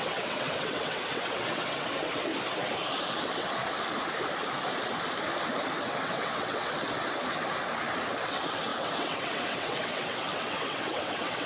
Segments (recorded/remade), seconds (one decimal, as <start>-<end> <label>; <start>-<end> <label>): 0.0-2.3 remade; 2.3-3.2 recorded; 3.2-3.6 remade; 3.6-5.8 recorded; 5.8-6.7 remade; 6.7-8.2 recorded; 8.2-11.5 remade